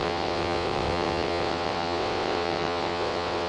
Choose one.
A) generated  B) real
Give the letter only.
A